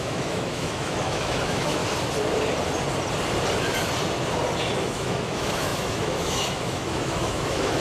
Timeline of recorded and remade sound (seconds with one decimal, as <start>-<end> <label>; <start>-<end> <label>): 0.0-1.8 remade; 1.8-4.7 recorded; 4.7-7.8 remade